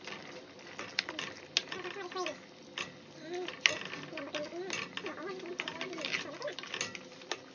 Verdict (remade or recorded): recorded